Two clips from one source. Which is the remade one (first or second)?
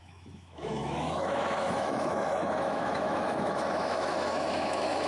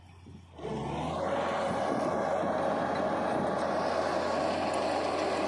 first